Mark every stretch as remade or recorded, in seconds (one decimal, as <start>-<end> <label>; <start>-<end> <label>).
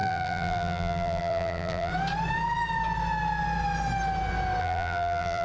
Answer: 0.0-1.9 remade; 1.9-4.6 recorded; 4.6-5.4 remade